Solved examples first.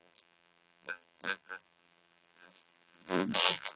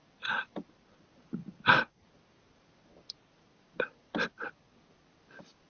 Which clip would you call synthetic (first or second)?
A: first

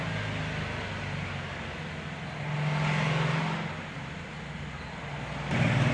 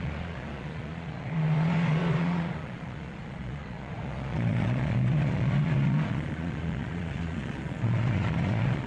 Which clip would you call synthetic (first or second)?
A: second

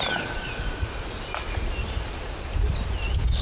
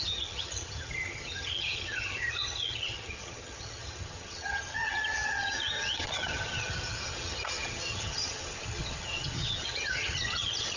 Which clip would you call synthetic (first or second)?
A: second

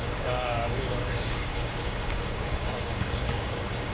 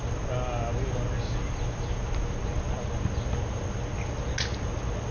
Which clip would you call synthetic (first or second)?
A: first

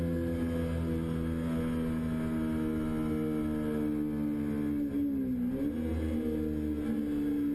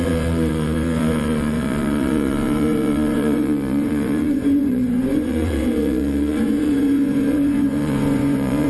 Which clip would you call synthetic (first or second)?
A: second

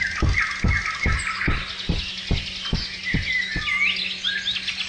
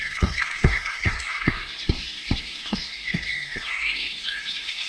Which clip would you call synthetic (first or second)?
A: second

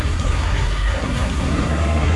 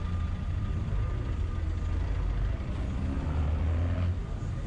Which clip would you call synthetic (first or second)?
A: first